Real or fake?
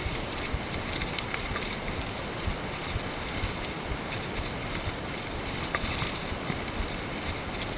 real